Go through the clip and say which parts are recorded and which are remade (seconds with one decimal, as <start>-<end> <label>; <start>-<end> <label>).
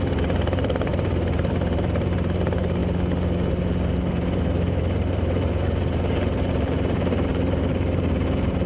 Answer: 0.0-2.8 remade; 2.8-4.1 recorded; 4.1-8.7 remade